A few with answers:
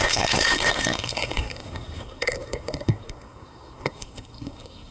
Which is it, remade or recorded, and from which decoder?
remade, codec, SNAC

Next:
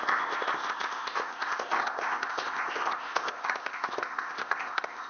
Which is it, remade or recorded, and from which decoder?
remade, codec, ZipCodec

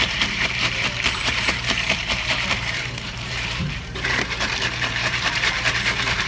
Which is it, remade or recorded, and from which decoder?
remade, vocoder, BigVGAN v2